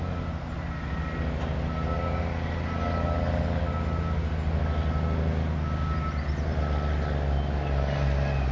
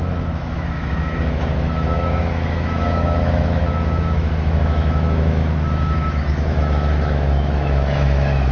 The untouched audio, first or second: first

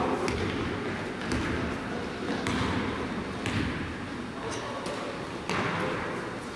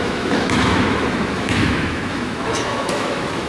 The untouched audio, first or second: first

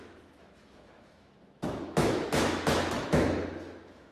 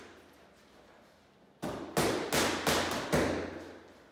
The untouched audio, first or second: second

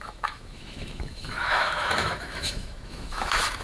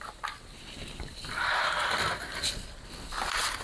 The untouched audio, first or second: second